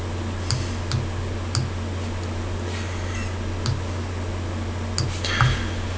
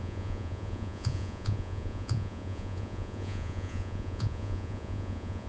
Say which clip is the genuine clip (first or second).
first